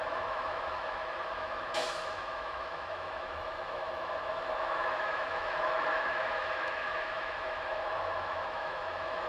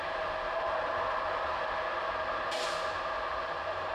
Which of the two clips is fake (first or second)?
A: first